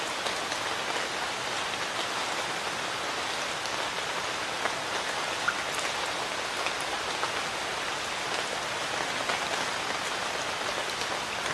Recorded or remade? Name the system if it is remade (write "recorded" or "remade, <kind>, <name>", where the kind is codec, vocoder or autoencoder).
recorded